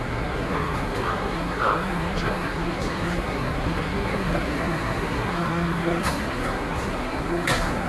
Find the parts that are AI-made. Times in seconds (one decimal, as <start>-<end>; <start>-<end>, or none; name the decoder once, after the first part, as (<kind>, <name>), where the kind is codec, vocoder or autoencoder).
0.0-7.9 (codec, SNAC)